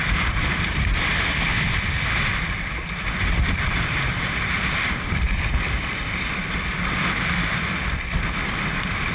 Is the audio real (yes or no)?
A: no